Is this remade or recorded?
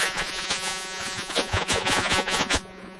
remade